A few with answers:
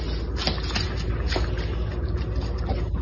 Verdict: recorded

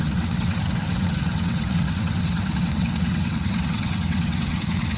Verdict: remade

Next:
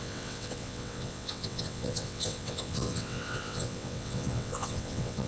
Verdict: remade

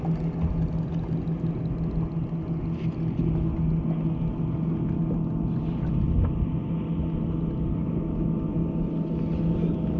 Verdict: recorded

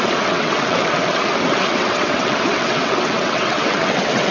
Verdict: remade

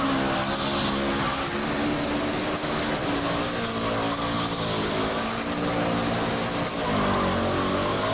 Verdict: recorded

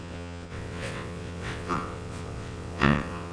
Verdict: remade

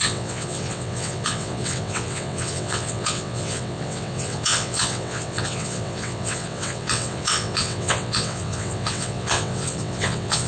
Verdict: remade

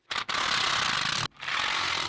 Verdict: recorded